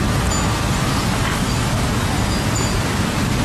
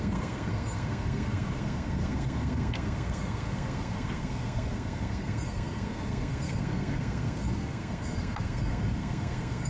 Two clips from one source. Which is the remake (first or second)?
second